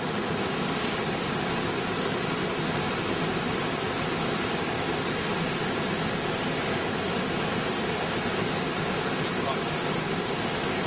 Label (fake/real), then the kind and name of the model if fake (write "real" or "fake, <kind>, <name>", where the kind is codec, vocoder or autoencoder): real